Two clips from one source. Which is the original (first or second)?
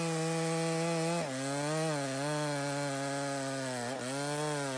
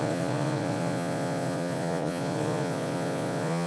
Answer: first